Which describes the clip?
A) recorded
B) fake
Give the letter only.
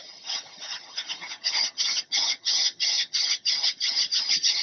B